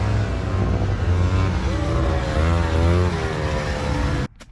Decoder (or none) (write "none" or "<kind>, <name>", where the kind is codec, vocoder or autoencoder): none